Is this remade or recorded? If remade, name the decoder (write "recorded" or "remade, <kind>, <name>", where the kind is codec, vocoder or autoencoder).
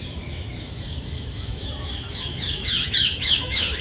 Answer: remade, autoencoder, DAC-VAE